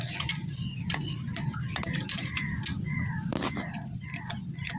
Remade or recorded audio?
recorded